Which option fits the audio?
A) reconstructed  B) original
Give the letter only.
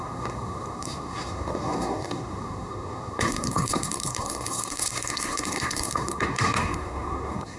A